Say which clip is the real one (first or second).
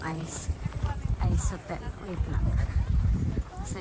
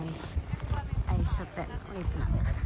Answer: second